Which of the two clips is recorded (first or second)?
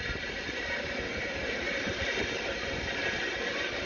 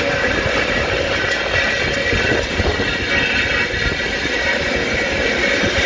second